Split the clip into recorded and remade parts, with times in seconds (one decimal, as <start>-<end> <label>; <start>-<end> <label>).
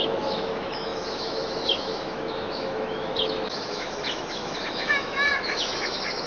0.0-6.3 remade